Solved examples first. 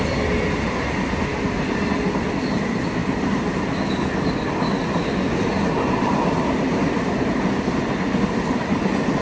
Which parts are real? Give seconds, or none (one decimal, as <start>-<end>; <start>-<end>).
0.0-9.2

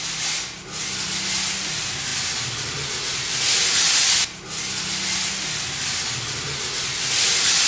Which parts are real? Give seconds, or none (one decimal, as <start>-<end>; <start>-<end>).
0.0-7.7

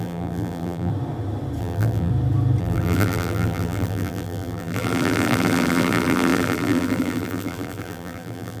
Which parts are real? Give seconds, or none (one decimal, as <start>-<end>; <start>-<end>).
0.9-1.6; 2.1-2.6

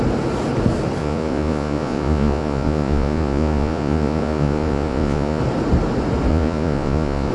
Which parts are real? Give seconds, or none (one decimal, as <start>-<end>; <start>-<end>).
0.0-1.0; 5.4-6.3

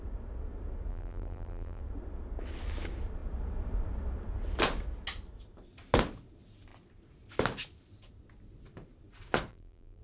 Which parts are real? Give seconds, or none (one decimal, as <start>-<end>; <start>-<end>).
0.0-0.9; 1.8-9.5

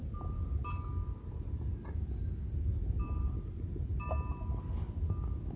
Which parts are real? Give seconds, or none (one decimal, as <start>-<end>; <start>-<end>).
0.0-2.7; 4.6-5.6

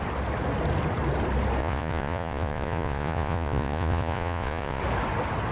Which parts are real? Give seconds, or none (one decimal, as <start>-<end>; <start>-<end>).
0.0-1.6; 4.8-5.5